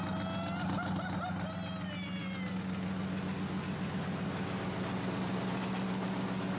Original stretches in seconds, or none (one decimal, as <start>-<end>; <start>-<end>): 0.0-6.6